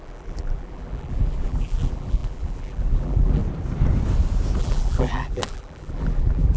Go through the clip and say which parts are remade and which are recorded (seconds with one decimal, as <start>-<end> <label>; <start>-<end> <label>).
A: 0.0-3.4 remade; 3.4-4.6 recorded; 4.6-6.6 remade